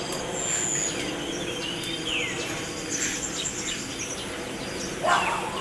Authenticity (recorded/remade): recorded